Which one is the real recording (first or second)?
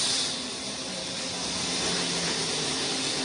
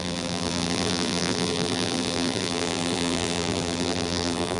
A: first